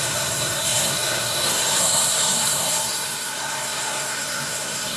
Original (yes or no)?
no